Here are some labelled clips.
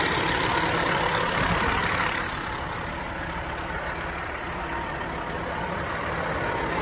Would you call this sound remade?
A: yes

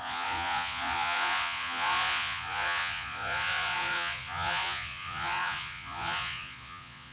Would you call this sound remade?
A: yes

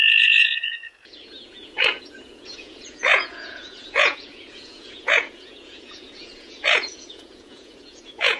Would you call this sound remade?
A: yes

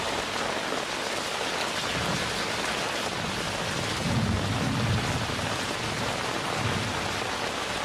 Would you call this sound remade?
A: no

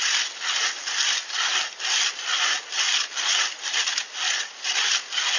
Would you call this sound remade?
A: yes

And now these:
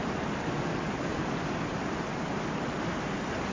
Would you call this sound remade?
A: no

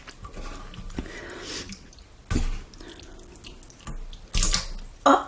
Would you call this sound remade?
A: no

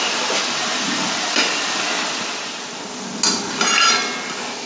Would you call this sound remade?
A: no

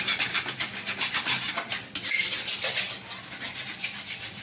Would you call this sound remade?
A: no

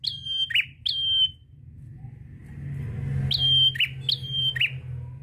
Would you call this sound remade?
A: no